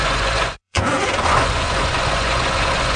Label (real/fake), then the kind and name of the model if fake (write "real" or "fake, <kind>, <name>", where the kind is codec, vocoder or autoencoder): fake, vocoder, Vocos